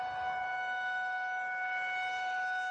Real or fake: fake